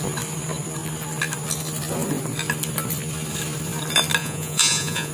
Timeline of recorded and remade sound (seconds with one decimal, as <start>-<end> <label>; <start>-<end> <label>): 0.0-4.2 recorded; 4.2-5.1 remade